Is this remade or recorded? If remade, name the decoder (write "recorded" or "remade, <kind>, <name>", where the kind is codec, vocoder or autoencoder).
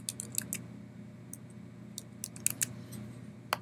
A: recorded